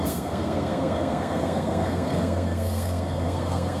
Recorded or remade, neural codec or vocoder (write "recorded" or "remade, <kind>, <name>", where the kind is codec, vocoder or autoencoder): remade, codec, SNAC